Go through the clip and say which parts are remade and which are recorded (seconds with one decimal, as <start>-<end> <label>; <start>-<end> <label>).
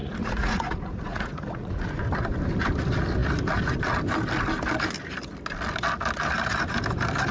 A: 0.0-1.9 remade; 1.9-7.3 recorded